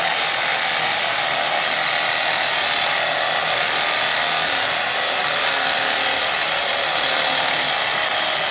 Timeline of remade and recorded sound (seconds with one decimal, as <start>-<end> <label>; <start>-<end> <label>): 0.0-8.5 recorded